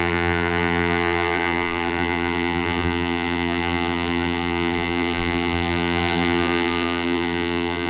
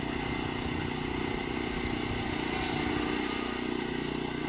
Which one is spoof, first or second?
first